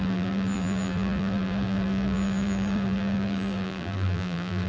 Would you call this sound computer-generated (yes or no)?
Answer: yes